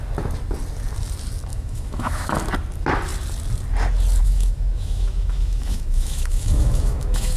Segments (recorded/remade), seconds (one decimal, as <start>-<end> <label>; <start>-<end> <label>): 0.0-1.5 recorded; 1.5-2.3 remade; 2.3-4.2 recorded; 4.2-7.4 remade